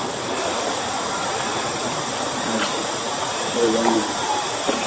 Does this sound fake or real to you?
fake